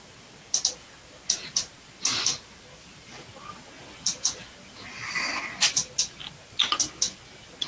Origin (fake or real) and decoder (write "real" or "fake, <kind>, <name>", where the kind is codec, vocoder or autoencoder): real